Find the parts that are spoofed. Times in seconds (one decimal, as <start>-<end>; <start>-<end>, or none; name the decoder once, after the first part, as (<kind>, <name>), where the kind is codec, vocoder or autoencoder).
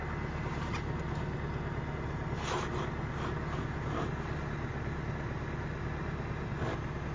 none